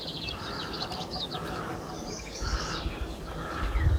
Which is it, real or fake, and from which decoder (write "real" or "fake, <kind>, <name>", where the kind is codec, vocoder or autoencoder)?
fake, codec, DAC